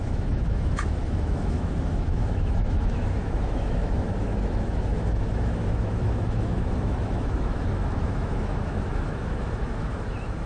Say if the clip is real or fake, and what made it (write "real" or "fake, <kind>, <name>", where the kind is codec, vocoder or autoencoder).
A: fake, autoencoder, DAC-VAE